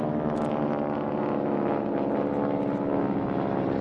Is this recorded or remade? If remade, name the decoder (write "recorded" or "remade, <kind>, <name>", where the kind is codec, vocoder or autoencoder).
recorded